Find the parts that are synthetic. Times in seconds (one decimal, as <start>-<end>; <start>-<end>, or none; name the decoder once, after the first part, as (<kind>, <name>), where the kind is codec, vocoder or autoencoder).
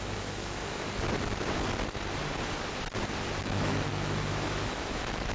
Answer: 0.0-0.6 (autoencoder, DAC-VAE); 3.4-5.3